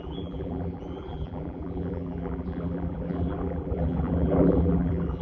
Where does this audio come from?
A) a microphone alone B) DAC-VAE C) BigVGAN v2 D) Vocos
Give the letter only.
C